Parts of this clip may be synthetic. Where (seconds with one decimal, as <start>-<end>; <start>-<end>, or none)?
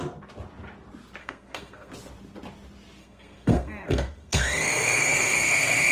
1.2-1.9; 3.0-5.9